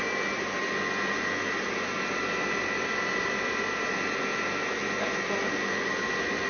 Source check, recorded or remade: recorded